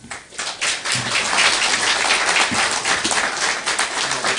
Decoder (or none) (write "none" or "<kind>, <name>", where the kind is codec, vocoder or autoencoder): none